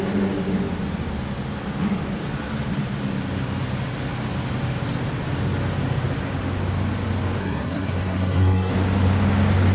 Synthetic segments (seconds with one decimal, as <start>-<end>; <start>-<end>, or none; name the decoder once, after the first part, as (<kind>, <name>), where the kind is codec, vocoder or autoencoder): 7.4-8.7 (codec, SNAC)